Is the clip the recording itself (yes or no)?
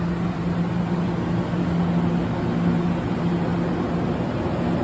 yes